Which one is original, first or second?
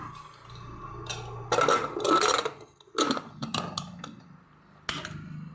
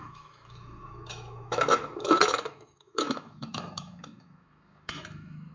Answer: first